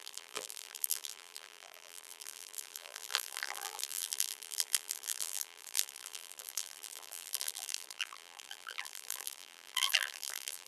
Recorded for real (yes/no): no